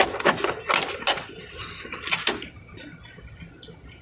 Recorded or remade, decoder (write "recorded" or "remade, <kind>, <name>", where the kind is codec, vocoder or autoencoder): recorded